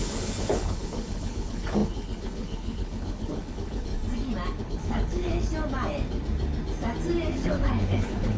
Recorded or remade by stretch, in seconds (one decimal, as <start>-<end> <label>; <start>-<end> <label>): 0.0-3.9 remade; 3.9-4.6 recorded; 4.6-5.5 remade; 5.5-7.3 recorded; 7.3-8.4 remade